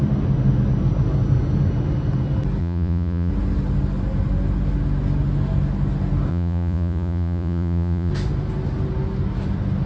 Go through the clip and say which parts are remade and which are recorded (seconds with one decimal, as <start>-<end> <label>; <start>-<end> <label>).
0.0-2.6 recorded; 2.6-3.3 remade; 3.3-6.3 recorded; 6.3-8.1 remade; 8.1-9.9 recorded